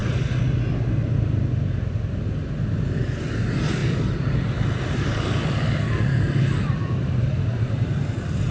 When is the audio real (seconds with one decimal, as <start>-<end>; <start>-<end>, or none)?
0.0-3.2